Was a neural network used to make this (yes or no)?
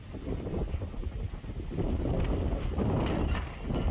no